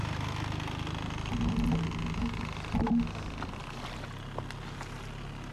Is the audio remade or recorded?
recorded